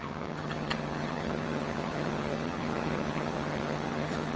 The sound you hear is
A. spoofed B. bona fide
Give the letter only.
A